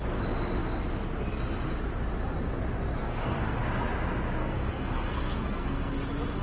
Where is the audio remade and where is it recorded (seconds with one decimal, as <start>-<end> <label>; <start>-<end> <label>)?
0.0-3.0 recorded; 3.0-3.6 remade; 3.6-4.4 recorded; 4.4-5.9 remade; 5.9-6.4 recorded